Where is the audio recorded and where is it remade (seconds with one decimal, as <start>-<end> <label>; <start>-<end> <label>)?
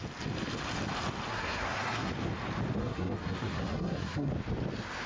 0.0-1.3 recorded; 1.3-2.1 remade; 2.1-2.8 recorded; 2.8-4.3 remade; 4.3-5.1 recorded